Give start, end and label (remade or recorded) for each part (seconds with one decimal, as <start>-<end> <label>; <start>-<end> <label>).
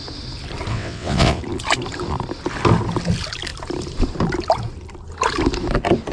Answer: 0.0-0.7 recorded; 0.7-1.4 remade; 1.4-6.1 recorded